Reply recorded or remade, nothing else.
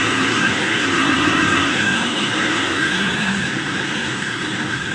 remade